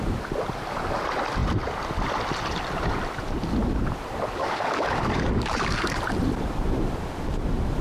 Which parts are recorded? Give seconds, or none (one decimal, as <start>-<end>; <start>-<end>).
0.0-4.4; 6.0-7.8